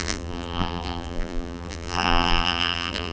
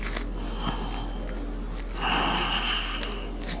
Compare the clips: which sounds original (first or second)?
second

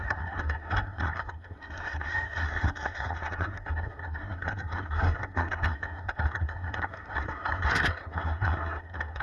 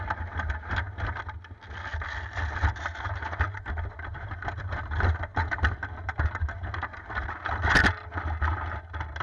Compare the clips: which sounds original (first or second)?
second